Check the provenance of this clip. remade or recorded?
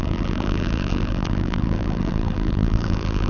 remade